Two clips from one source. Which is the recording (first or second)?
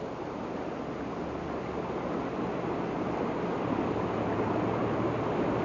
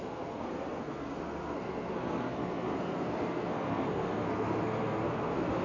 first